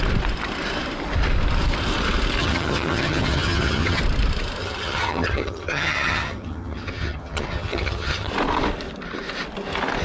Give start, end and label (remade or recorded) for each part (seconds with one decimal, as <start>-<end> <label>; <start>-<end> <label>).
0.0-2.4 recorded; 2.4-4.0 remade; 4.0-4.6 recorded; 4.6-8.3 remade; 8.3-10.0 recorded